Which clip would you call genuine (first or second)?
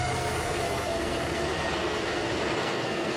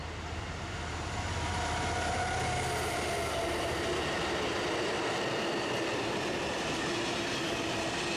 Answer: second